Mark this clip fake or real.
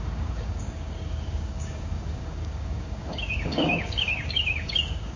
fake